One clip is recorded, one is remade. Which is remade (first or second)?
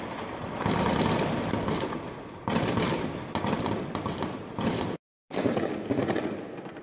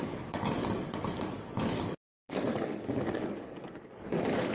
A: second